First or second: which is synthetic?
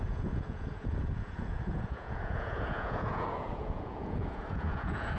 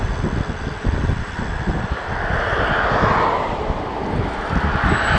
first